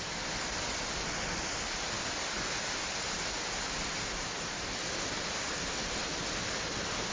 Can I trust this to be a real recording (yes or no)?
yes